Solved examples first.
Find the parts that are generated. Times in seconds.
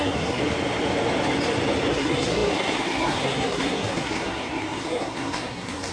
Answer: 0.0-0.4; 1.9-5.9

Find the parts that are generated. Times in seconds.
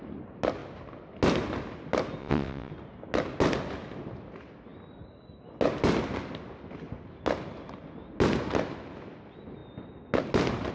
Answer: 2.2-2.7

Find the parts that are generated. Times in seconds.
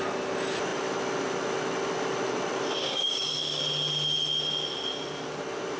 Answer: 2.8-3.6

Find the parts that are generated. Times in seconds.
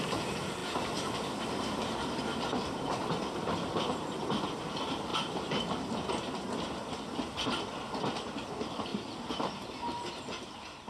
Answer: 8.9-10.9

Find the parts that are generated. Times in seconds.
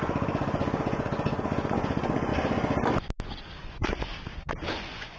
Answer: 0.0-2.3; 3.6-4.1; 4.7-5.2